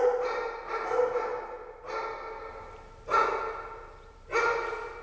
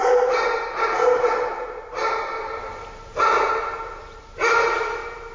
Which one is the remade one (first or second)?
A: second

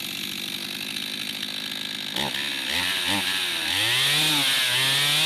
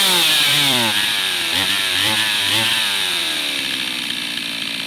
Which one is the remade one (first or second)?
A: second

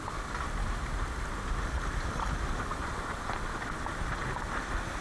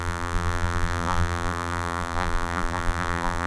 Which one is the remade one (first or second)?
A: second